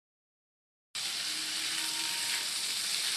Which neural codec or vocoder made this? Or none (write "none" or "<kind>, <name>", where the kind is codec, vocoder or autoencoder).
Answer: none